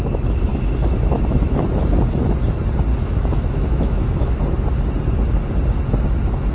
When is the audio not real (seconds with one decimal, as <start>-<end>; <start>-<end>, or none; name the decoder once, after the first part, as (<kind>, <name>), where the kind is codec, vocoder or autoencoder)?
0.5-1.5 (autoencoder, DAC-VAE); 2.9-4.3